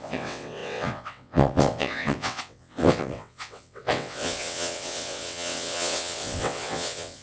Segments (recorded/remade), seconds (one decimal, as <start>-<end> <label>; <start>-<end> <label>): 0.0-7.2 remade